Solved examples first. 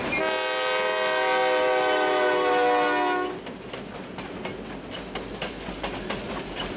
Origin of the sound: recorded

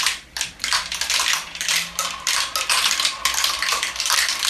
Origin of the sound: remade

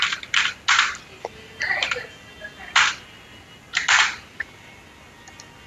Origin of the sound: recorded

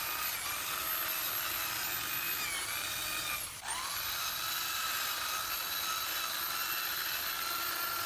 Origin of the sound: recorded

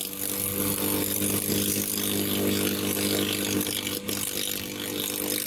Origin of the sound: recorded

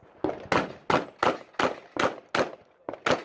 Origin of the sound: recorded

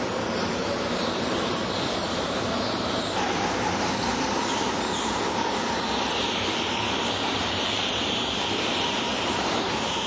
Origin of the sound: remade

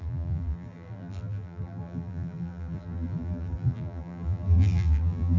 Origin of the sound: remade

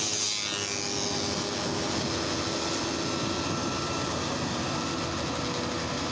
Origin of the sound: recorded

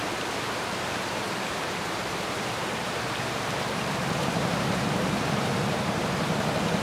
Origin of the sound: remade